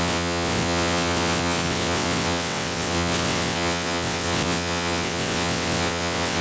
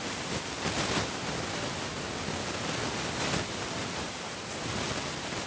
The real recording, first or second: second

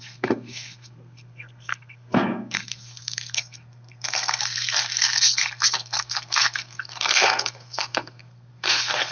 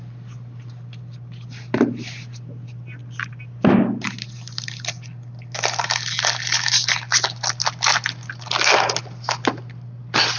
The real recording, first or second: second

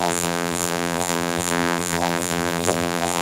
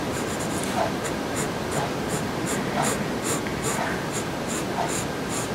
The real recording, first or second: second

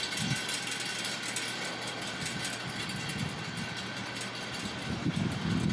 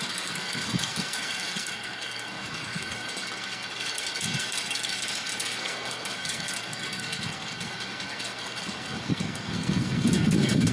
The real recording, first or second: first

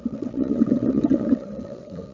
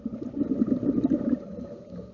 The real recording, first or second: second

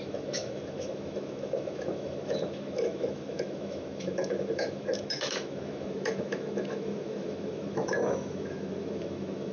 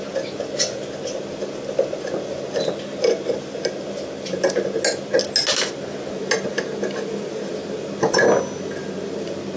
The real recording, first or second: second